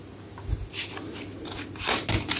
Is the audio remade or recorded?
recorded